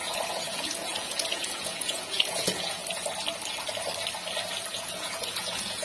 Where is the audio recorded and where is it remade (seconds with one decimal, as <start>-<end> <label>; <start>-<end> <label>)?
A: 0.0-2.8 remade; 2.8-4.7 recorded; 4.7-5.8 remade